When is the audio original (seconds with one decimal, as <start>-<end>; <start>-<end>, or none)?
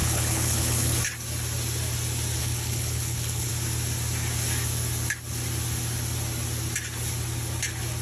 1.0-2.4; 3.5-8.0